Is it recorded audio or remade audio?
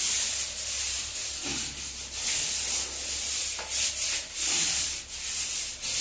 recorded